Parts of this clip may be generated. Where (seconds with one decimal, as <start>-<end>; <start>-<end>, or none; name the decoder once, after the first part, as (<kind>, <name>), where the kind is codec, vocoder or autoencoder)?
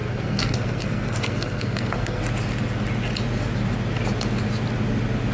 0.0-2.2 (codec, SNAC)